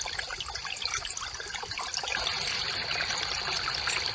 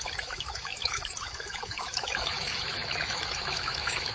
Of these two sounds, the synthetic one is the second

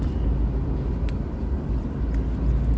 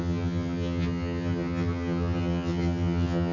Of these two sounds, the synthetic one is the second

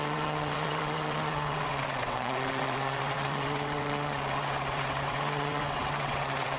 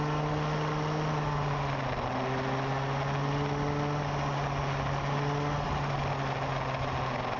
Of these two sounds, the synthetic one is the first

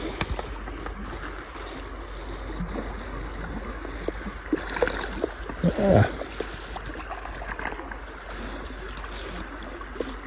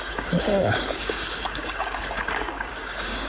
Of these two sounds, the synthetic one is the second